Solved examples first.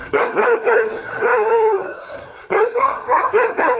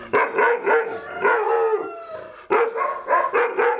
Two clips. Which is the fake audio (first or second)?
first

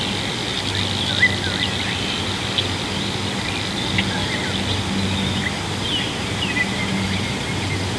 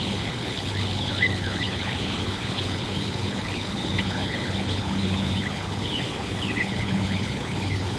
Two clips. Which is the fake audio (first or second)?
second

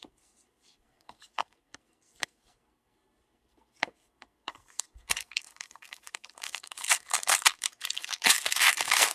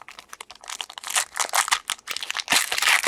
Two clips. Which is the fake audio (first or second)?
first